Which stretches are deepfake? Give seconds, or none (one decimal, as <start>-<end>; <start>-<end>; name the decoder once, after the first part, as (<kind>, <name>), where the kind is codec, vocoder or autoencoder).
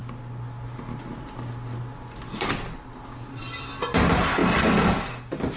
none